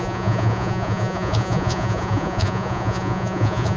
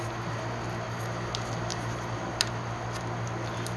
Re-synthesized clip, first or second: first